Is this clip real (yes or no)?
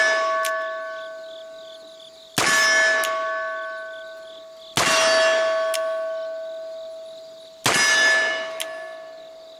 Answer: yes